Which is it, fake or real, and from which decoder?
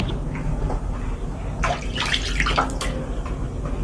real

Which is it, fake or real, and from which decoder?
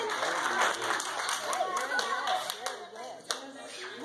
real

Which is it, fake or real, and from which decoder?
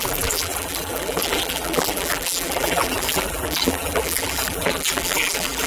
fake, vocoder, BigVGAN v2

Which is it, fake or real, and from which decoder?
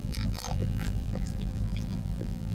fake, vocoder, BigVGAN v2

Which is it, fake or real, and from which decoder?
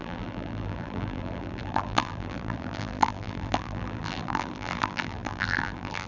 fake, vocoder, BigVGAN v2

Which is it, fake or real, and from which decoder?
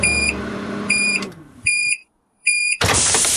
fake, vocoder, BigVGAN v2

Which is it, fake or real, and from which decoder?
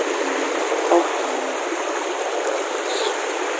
real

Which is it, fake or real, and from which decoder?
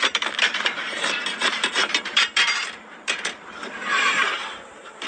fake, vocoder, BigVGAN v2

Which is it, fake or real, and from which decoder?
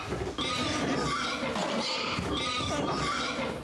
real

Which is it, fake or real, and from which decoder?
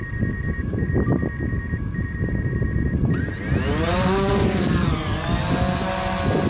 real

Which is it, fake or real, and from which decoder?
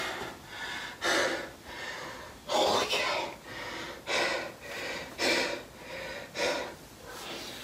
real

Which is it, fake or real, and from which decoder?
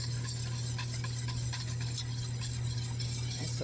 real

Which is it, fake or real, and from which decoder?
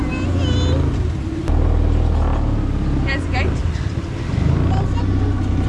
real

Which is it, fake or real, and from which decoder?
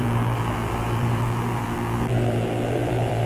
fake, vocoder, BigVGAN v2